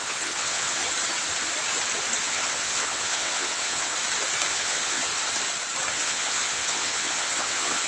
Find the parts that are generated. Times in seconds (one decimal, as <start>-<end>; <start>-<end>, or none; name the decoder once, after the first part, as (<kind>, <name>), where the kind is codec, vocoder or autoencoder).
0.0-0.8 (vocoder, WaveNeXt); 2.2-3.9; 4.5-5.1; 5.9-7.9